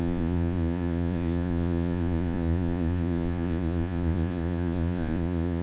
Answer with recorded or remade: remade